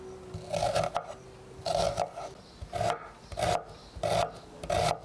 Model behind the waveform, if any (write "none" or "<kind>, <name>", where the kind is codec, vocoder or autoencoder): none